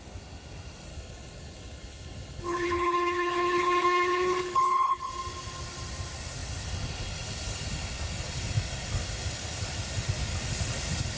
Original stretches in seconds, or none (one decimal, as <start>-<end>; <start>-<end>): 0.0-0.9; 5.1-11.2